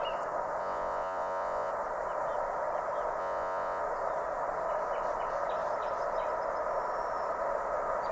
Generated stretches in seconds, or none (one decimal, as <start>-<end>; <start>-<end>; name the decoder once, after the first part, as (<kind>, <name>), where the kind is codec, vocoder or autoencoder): 0.6-1.7 (vocoder, Vocos); 3.2-3.8